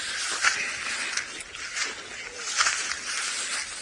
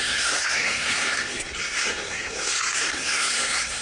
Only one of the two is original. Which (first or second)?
first